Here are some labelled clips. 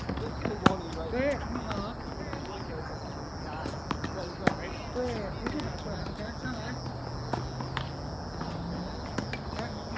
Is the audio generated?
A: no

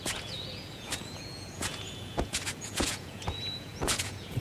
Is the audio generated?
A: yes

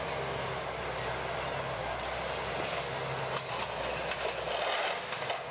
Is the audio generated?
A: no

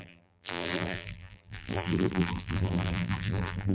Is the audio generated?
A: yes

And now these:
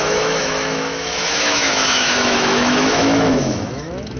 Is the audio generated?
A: yes